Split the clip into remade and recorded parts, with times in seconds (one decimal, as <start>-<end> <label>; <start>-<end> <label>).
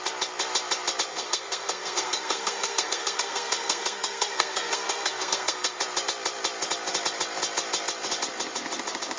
0.0-1.1 recorded; 1.1-5.8 remade; 5.8-9.2 recorded